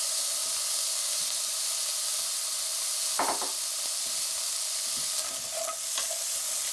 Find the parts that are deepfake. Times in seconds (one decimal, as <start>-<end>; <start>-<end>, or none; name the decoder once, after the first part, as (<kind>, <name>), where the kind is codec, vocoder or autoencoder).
none